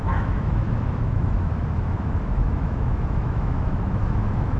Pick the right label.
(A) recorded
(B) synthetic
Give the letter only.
B